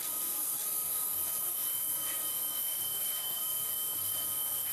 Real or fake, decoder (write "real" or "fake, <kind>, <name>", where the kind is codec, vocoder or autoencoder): fake, codec, SNAC